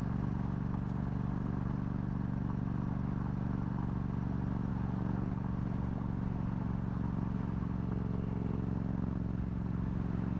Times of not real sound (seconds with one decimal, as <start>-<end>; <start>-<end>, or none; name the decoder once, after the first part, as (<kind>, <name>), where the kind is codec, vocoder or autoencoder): 4.7-5.3 (vocoder, Vocos)